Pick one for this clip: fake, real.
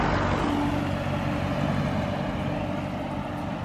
real